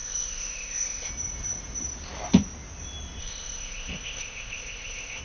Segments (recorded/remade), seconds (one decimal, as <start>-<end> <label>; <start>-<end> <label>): 0.0-1.1 remade; 1.1-3.2 recorded; 3.2-5.2 remade